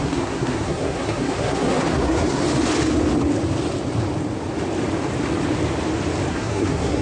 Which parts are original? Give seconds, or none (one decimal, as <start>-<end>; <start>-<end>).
2.4-6.3